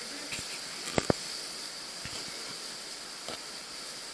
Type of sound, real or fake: real